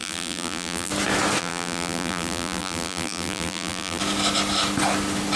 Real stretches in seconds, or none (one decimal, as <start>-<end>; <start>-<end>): 0.9-1.4; 4.0-5.4